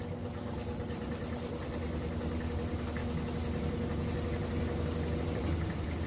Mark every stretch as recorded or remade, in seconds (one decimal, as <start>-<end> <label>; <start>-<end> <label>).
0.0-1.0 remade; 1.0-1.5 recorded; 1.5-3.0 remade; 3.0-5.2 recorded; 5.2-6.1 remade